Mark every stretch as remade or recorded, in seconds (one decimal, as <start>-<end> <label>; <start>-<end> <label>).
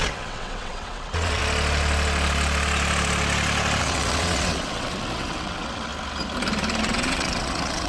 0.0-1.4 remade; 1.4-3.8 recorded; 3.8-5.9 remade; 5.9-6.8 recorded; 6.8-7.9 remade